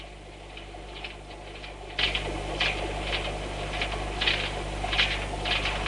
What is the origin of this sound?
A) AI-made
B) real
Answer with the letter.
B